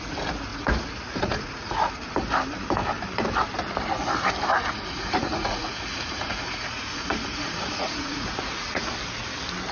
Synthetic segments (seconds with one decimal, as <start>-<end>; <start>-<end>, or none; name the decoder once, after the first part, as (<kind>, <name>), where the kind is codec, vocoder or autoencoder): 0.5-1.9 (vocoder, Vocos); 4.5-8.8